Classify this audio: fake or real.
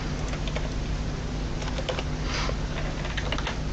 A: real